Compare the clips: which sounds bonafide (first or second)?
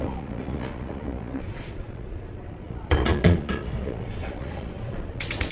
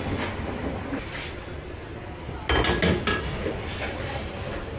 second